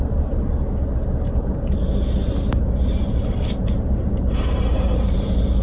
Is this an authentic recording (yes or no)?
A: no